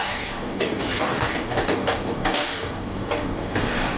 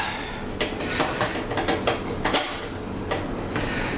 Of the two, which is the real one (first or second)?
second